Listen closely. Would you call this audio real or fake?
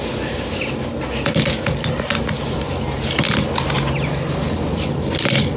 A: real